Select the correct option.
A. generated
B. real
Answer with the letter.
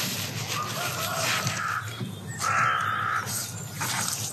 B